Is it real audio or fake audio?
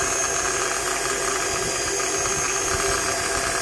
real